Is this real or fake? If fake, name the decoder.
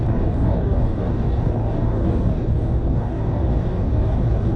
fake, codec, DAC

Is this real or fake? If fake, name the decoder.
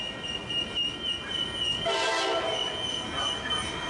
real